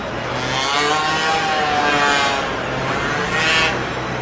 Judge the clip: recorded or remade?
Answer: recorded